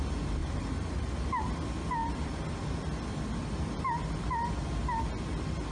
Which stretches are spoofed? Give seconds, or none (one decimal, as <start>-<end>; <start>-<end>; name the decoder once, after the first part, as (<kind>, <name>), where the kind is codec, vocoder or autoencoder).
0.4-1.1 (vocoder, BigVGAN v2)